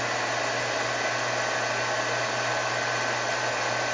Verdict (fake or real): real